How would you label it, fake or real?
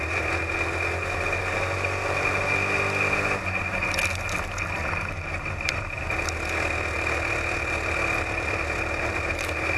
real